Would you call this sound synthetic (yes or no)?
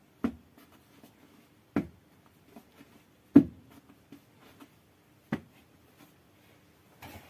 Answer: no